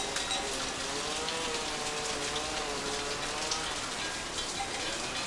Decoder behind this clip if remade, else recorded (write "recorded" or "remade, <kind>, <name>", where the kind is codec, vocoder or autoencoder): recorded